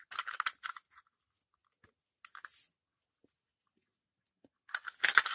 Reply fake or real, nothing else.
real